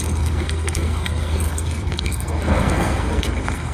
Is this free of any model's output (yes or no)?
no